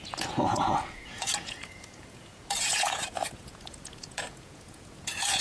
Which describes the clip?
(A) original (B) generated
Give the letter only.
B